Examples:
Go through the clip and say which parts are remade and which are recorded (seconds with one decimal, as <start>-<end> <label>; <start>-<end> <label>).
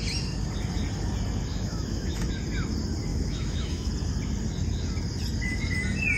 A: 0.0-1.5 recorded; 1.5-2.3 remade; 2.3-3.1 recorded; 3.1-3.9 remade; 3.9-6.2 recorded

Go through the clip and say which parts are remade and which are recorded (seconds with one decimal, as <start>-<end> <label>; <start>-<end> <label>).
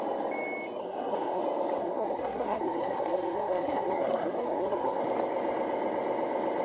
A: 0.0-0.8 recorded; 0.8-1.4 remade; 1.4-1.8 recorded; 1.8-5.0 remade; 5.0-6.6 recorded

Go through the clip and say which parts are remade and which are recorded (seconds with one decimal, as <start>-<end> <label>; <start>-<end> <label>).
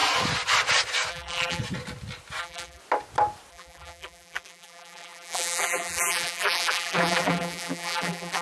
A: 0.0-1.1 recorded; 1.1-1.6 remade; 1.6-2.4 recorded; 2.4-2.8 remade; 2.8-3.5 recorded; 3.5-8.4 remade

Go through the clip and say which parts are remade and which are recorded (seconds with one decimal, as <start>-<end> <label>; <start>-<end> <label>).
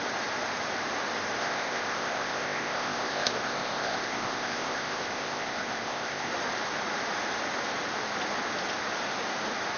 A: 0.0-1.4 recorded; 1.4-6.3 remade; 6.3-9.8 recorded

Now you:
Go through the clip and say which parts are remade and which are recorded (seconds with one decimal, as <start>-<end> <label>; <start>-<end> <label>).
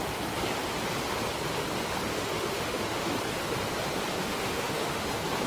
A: 0.0-2.1 recorded; 2.1-3.1 remade; 3.1-4.2 recorded; 4.2-5.1 remade; 5.1-5.5 recorded